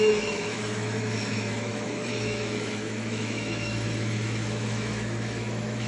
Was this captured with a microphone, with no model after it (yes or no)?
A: no